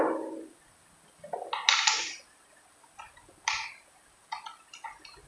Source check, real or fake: real